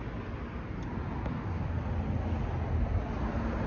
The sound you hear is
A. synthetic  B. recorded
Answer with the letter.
B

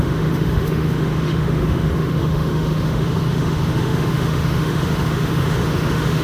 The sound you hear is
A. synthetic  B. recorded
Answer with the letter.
A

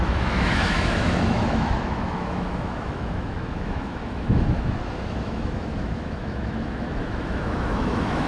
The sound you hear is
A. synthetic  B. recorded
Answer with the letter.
A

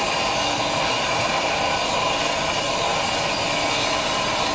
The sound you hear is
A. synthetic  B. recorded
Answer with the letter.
B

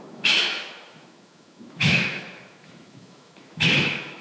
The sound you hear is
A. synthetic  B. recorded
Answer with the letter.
A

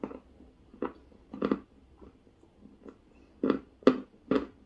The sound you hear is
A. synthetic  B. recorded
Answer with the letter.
B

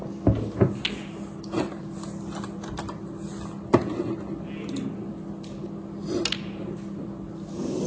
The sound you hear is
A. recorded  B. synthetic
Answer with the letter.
A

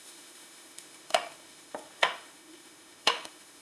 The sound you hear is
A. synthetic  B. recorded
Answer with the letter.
A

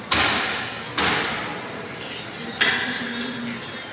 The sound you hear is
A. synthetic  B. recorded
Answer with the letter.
B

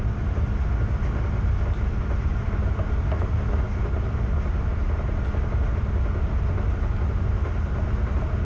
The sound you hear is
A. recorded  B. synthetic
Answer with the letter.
A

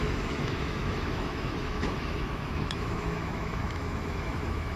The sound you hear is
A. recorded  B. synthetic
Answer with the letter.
B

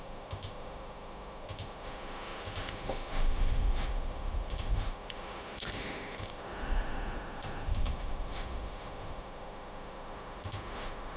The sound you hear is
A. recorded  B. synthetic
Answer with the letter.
B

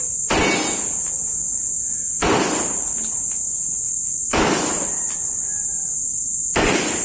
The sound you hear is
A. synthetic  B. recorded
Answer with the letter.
B